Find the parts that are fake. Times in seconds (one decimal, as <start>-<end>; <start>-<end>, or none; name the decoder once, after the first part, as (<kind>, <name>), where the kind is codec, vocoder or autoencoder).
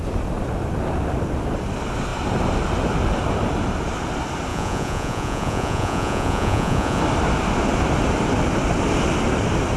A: 4.5-7.0 (vocoder, Vocos)